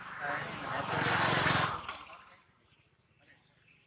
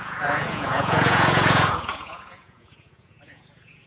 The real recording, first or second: first